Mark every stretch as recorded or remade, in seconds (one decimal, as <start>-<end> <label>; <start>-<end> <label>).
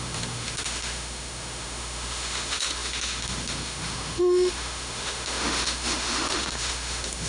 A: 0.0-7.3 remade